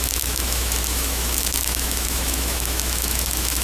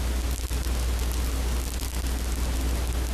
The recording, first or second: second